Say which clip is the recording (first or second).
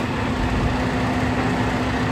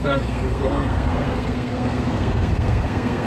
first